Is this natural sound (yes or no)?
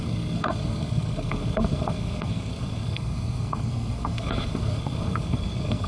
no